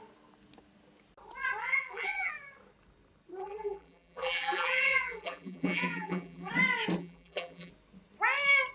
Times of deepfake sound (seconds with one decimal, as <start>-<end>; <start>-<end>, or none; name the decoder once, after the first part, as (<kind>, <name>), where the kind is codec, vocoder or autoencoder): 1.6-2.3 (vocoder, BigVGAN v2); 3.4-6.5; 7.0-7.7